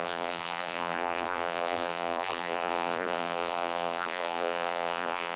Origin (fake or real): fake